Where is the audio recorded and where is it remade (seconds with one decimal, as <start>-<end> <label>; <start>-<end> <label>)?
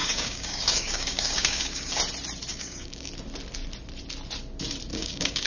0.0-2.0 remade; 2.0-2.5 recorded; 2.5-3.1 remade; 3.1-4.9 recorded; 4.9-5.5 remade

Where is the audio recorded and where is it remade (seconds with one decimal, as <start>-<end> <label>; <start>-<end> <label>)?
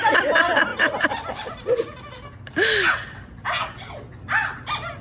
0.0-0.7 recorded; 0.7-2.0 remade; 2.0-5.0 recorded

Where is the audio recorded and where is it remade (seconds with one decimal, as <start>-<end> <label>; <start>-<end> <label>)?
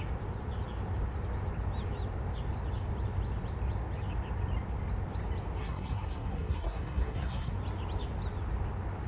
0.0-5.6 recorded; 5.6-7.5 remade; 7.5-9.1 recorded